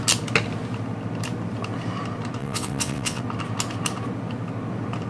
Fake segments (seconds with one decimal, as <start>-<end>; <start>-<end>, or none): 2.4-3.2